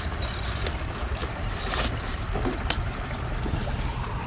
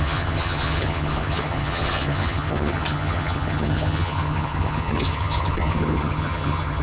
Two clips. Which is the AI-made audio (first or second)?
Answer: second